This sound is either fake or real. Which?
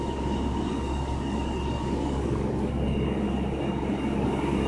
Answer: fake